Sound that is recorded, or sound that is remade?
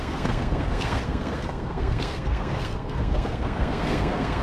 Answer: remade